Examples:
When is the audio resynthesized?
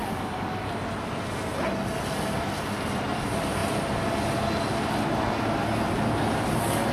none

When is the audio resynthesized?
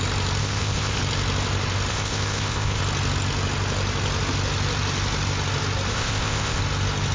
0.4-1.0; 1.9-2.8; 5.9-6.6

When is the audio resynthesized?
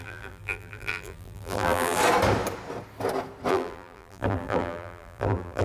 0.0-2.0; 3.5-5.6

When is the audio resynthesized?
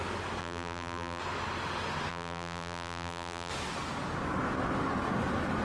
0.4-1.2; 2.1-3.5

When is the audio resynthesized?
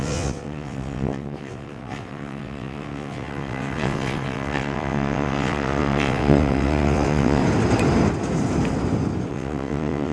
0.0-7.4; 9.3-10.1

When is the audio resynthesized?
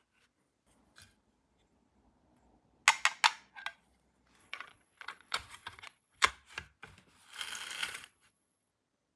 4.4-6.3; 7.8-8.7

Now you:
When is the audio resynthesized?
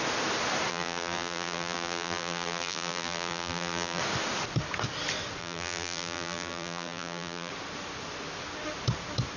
0.7-4.0; 5.4-7.5